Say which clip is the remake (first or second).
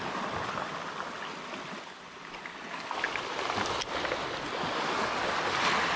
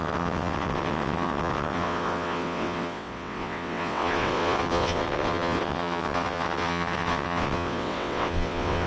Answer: second